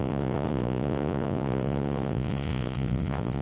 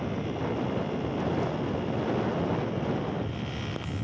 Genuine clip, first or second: second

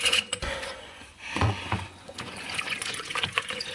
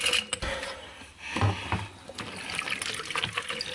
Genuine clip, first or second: second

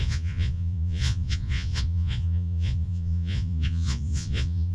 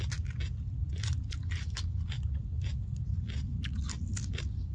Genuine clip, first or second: second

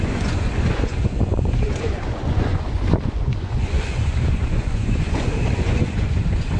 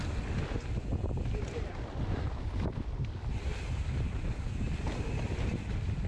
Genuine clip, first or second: second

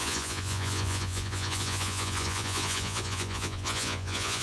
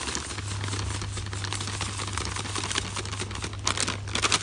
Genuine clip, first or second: second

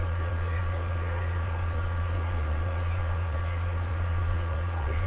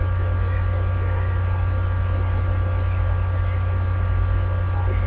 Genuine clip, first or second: second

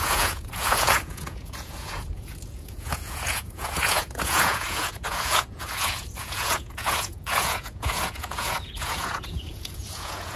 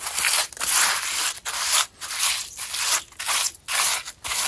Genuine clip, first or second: second